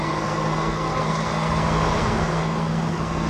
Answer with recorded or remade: remade